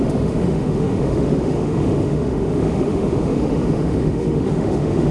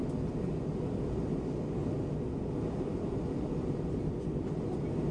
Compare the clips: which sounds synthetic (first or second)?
first